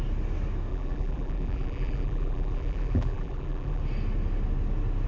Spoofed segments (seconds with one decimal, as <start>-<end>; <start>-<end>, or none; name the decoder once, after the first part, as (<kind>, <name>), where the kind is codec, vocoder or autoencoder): 0.7-3.8 (vocoder, BigVGAN v2)